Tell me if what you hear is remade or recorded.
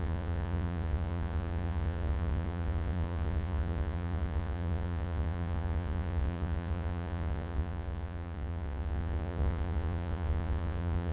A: remade